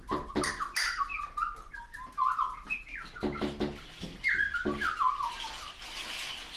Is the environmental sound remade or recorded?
recorded